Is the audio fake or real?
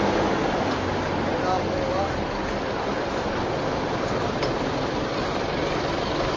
real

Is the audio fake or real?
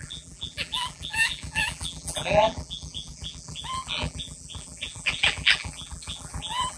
fake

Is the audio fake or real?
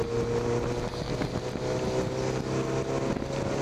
real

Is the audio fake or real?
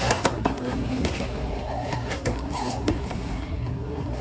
fake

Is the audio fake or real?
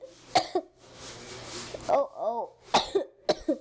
real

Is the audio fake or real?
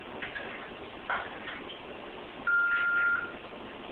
real